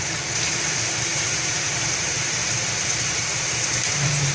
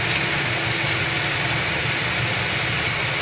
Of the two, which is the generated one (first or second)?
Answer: first